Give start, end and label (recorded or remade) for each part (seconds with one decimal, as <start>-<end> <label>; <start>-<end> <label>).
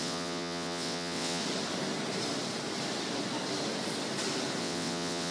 0.0-1.4 remade; 1.4-4.6 recorded; 4.6-5.3 remade